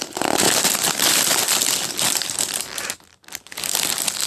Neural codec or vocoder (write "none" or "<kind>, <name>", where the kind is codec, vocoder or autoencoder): vocoder, BigVGAN v2